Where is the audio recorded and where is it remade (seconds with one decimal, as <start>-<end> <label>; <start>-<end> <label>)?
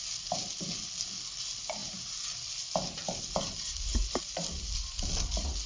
0.0-5.7 recorded